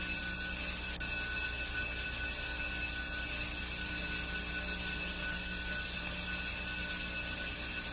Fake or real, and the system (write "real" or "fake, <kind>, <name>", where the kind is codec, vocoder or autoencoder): real